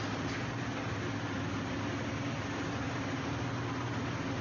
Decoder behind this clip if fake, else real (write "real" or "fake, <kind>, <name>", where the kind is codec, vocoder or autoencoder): real